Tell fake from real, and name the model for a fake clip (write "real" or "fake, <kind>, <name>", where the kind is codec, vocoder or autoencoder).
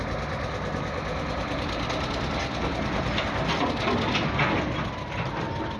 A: real